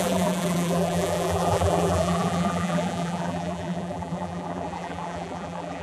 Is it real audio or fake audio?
fake